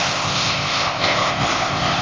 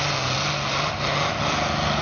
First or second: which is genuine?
second